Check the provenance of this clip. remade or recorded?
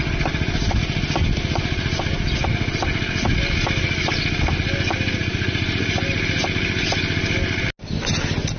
recorded